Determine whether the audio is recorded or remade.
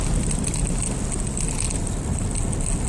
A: recorded